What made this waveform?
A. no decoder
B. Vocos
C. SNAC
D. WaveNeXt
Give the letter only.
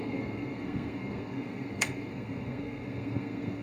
C